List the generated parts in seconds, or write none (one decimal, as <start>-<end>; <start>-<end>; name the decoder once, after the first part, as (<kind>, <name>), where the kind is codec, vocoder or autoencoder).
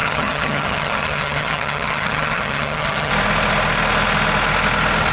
0.0-3.1 (vocoder, HiFi-GAN)